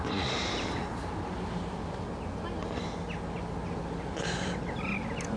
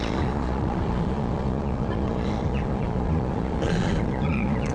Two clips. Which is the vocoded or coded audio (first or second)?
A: second